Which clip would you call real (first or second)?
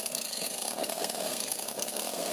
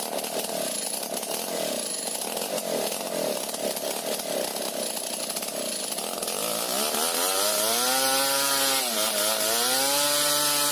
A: second